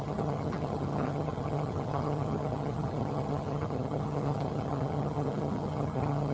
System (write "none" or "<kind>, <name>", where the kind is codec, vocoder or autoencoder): vocoder, HiFi-GAN